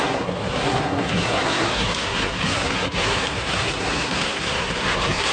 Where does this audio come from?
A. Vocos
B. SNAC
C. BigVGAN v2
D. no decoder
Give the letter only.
B